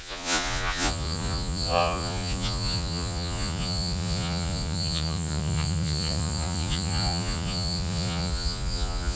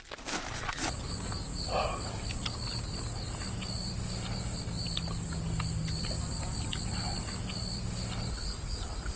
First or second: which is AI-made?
first